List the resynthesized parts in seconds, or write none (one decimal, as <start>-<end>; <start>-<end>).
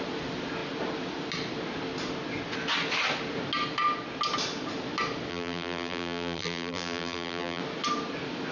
5.3-7.6